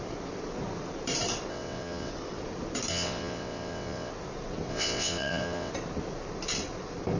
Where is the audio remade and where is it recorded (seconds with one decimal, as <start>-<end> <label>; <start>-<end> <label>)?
0.0-1.5 recorded; 1.5-2.1 remade; 2.1-2.9 recorded; 2.9-4.1 remade; 4.1-4.7 recorded; 4.7-5.7 remade; 5.7-7.2 recorded